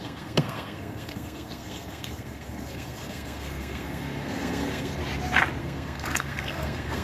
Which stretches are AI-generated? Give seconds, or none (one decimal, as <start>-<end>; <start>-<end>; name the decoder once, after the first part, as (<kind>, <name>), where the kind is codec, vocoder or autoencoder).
0.0-5.0 (codec, SNAC); 5.6-7.0